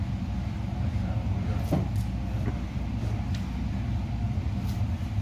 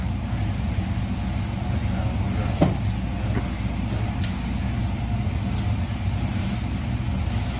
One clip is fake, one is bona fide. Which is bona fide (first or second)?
second